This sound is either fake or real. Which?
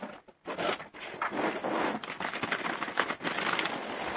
real